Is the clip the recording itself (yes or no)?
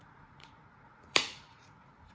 no